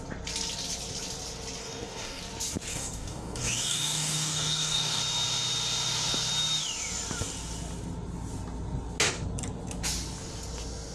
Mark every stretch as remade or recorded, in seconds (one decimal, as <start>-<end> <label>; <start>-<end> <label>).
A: 0.0-1.6 recorded; 1.6-2.2 remade; 2.2-2.7 recorded; 2.7-5.0 remade; 5.0-10.9 recorded